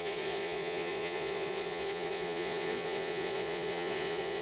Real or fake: fake